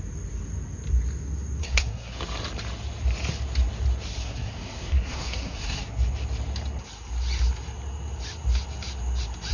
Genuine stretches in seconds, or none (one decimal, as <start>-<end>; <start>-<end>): 0.0-1.6; 2.2-4.2; 5.8-9.5